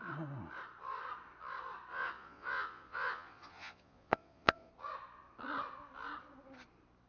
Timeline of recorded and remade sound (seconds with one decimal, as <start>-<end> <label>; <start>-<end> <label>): 0.0-1.9 recorded; 1.9-4.7 remade; 4.7-7.1 recorded